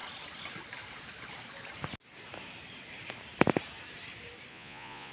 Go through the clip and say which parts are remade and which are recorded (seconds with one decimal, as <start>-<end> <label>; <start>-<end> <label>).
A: 0.0-4.5 recorded; 4.5-5.1 remade